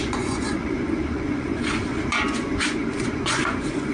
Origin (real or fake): fake